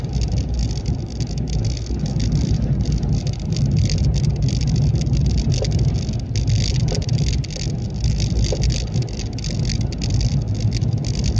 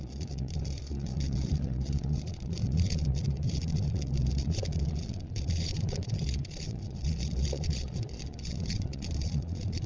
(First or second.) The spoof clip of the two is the second